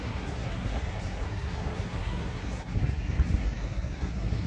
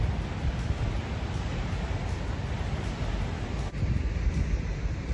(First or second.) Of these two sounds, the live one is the second